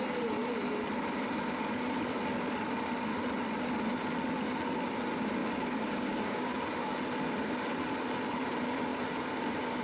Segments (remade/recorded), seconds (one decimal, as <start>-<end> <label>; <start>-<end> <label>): 0.0-5.4 recorded; 5.4-6.5 remade; 6.5-9.8 recorded